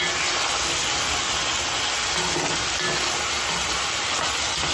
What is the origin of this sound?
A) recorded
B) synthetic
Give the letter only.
A